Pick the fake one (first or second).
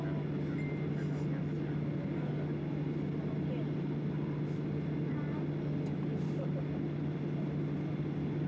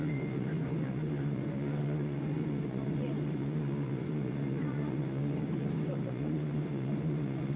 second